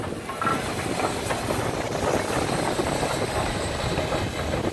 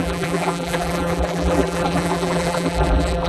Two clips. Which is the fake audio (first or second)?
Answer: second